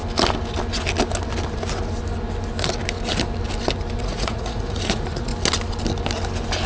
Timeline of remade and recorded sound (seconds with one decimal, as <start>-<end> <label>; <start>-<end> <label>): 0.0-4.0 recorded; 4.0-5.3 remade; 5.3-6.7 recorded